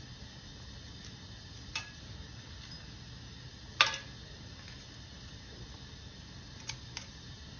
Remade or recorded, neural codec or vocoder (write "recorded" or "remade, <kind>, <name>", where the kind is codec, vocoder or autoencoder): recorded